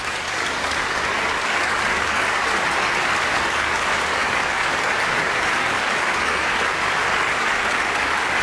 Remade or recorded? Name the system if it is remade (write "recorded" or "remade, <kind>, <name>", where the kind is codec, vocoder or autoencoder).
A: remade, codec, DAC